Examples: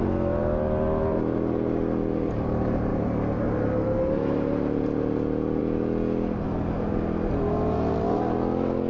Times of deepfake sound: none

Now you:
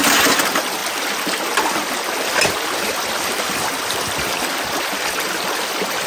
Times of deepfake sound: none

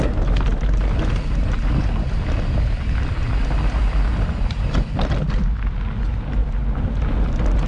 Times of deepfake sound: 4.1-5.1 (vocoder, BigVGAN v2); 6.4-7.0